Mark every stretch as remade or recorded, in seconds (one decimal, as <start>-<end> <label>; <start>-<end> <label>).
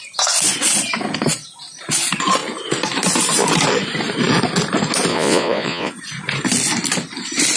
0.0-5.1 recorded; 5.1-5.9 remade; 5.9-7.6 recorded